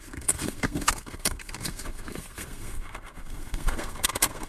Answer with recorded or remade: remade